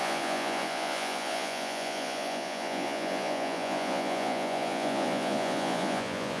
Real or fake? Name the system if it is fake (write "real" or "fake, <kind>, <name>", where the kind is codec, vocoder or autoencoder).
fake, vocoder, Vocos